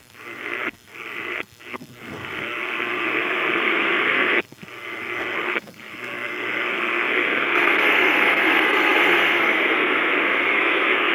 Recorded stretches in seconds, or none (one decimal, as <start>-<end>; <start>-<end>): none